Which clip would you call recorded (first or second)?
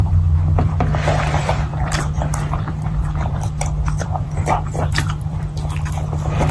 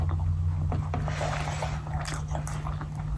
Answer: second